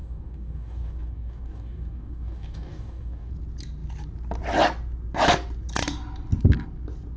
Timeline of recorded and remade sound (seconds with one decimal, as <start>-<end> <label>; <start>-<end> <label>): 0.0-3.3 remade; 3.3-7.2 recorded